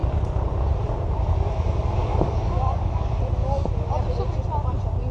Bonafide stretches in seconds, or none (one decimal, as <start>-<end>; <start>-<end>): 0.0-2.0; 3.1-5.1